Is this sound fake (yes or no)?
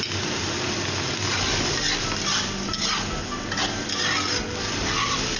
no